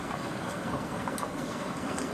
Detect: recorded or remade remade